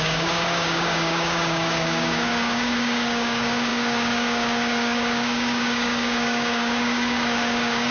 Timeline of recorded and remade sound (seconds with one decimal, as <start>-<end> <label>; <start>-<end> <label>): 0.0-7.9 remade